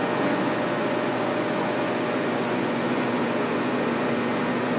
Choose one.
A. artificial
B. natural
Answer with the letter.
A